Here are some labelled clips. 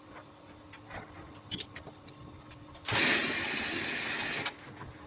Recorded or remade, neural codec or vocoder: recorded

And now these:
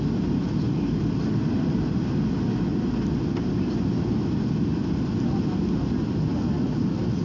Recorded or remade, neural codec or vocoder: recorded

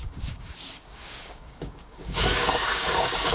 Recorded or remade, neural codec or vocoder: remade, codec, DAC